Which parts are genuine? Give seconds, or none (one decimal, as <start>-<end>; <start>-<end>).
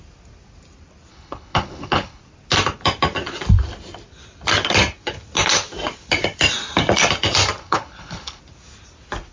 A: 0.0-1.1; 2.2-7.6; 8.4-9.3